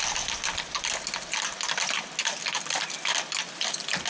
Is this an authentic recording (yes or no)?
yes